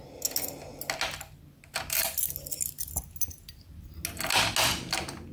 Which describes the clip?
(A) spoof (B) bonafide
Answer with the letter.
B